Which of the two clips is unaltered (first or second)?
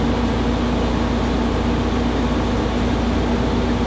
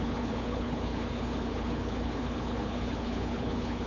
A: first